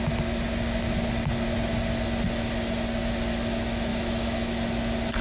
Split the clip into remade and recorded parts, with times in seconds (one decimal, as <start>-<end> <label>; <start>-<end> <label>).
0.0-3.9 recorded; 3.9-4.5 remade; 4.5-5.2 recorded